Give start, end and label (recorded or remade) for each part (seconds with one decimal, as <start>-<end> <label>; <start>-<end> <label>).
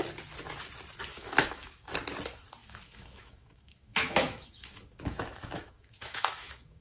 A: 0.0-1.1 recorded; 1.1-1.9 remade; 1.9-2.6 recorded; 2.6-6.8 remade